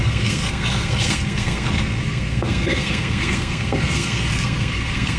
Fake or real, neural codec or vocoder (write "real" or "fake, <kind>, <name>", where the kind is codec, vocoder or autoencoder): fake, codec, SNAC